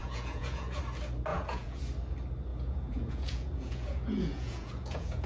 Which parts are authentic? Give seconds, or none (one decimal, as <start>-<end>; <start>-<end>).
0.8-1.3; 1.8-2.5